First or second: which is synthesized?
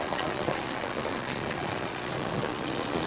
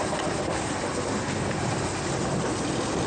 first